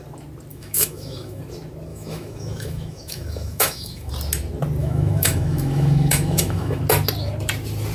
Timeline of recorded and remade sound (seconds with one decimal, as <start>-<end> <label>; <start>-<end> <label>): 0.0-0.5 recorded; 0.5-1.4 remade; 1.4-1.9 recorded; 1.9-4.1 remade; 4.1-4.8 recorded; 4.8-6.8 remade; 6.8-7.9 recorded